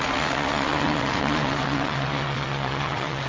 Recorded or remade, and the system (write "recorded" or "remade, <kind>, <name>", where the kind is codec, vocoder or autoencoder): remade, vocoder, WaveNeXt